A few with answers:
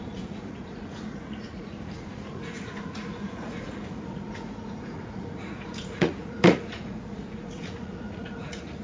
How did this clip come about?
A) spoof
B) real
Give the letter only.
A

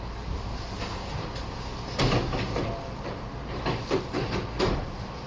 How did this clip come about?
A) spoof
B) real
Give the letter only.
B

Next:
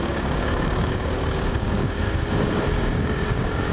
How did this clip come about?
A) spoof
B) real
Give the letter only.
A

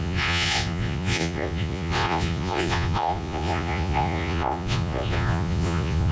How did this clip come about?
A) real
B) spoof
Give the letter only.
B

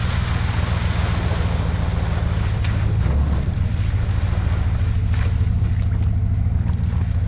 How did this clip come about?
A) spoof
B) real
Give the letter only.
B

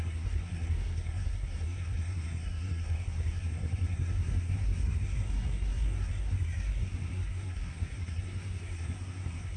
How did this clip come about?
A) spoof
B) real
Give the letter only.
A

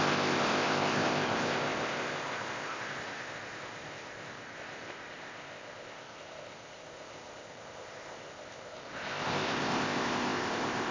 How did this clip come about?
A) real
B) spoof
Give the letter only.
B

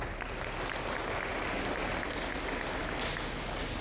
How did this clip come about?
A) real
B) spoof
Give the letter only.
A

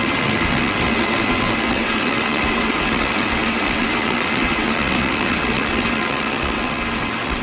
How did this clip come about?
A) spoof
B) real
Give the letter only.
A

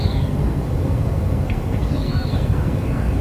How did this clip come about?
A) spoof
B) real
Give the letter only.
A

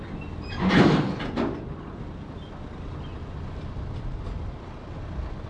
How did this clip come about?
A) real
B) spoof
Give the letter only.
A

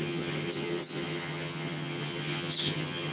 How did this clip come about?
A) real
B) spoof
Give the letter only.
B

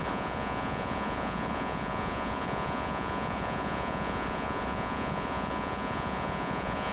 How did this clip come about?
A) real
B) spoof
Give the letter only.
B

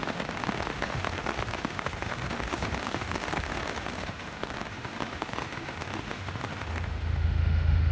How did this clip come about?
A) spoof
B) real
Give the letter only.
A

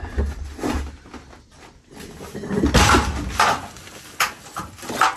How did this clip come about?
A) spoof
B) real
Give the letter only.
B